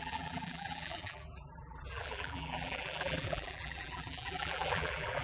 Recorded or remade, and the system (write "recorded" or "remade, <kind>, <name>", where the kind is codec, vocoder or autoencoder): remade, vocoder, BigVGAN v2